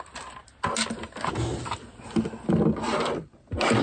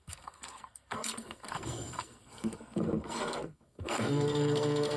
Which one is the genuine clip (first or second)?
first